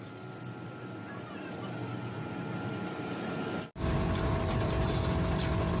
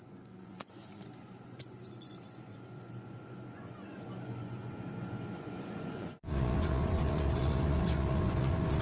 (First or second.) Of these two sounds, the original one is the first